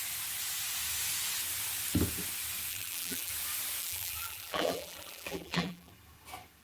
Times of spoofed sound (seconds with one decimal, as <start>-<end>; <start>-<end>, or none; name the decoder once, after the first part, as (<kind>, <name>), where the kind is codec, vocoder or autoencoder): 2.7-3.3 (vocoder, BigVGAN v2); 3.8-5.9